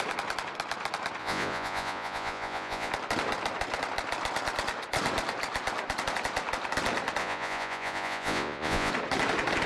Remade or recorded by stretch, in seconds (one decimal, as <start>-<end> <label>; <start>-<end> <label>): 0.0-1.2 recorded; 1.2-2.9 remade; 2.9-7.2 recorded; 7.2-8.9 remade; 8.9-9.7 recorded